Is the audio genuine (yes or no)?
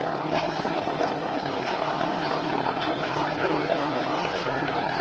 no